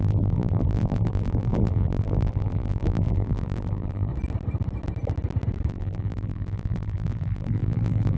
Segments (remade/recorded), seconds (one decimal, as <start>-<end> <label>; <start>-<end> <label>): 0.0-4.1 remade; 4.1-5.7 recorded; 5.7-8.2 remade